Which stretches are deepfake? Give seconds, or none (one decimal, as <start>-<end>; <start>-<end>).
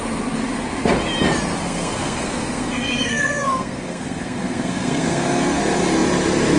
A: 1.6-5.6